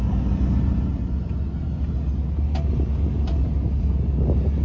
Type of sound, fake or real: real